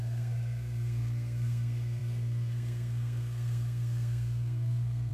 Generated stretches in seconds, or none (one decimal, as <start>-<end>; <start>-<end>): 0.0-5.1